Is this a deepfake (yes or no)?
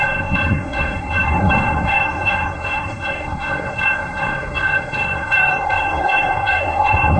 yes